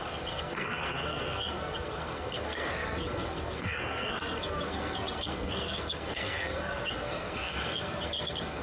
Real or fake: fake